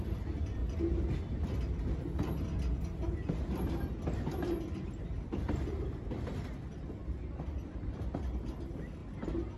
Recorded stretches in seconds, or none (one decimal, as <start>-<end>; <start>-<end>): 0.6-5.0; 9.0-9.6